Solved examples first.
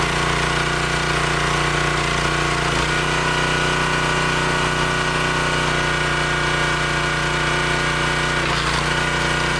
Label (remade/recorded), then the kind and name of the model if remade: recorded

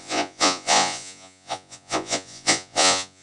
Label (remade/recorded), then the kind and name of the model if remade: remade, vocoder, Vocos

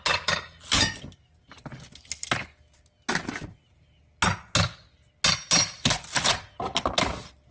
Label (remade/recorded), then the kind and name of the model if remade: recorded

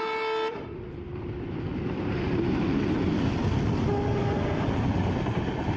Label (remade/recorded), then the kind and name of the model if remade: recorded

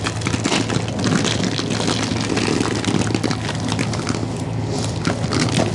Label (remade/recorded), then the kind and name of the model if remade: recorded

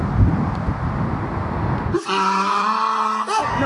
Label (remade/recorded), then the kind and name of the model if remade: recorded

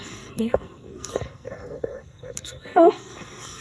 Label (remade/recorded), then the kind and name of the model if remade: remade, codec, SNAC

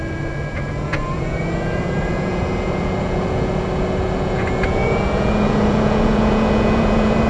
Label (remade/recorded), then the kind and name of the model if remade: remade, vocoder, Vocos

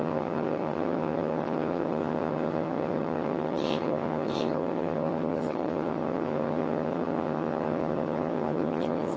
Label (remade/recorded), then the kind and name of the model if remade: remade, vocoder, HiFi-GAN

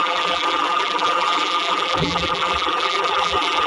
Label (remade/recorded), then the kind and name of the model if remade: remade, vocoder, BigVGAN v2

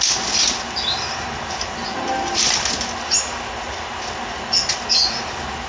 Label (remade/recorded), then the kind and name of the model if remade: recorded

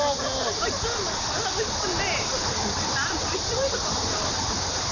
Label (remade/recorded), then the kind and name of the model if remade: recorded